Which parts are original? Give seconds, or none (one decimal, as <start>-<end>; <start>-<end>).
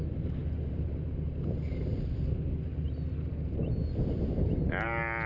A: 0.0-5.3